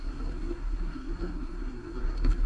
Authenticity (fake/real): fake